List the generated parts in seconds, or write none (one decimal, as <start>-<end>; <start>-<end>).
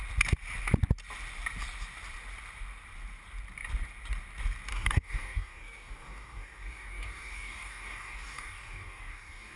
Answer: 4.7-9.6